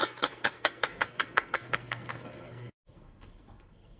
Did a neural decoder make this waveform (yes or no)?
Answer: yes